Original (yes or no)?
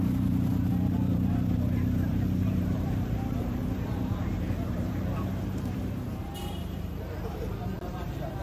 no